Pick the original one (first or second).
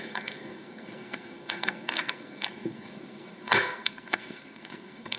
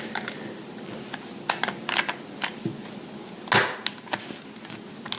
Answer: second